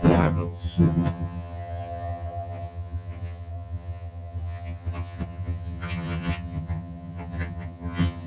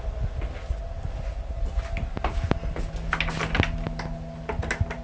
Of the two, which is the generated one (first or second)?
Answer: first